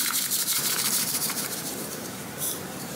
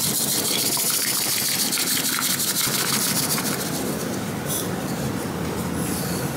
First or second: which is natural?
second